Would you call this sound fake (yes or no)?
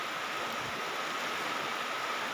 no